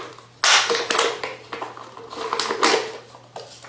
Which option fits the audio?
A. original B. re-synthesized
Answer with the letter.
A